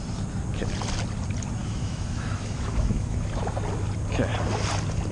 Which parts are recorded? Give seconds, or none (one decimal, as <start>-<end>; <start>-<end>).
0.0-1.6; 3.4-5.1